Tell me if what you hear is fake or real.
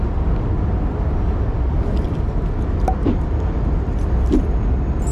real